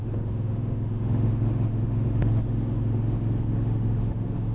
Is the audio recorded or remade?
remade